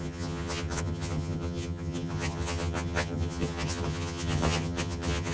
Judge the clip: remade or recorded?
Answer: remade